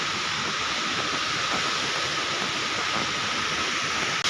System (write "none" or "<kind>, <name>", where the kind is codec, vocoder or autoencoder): none